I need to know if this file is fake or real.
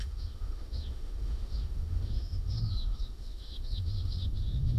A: fake